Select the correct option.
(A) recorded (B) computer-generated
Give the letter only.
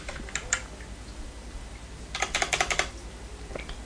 A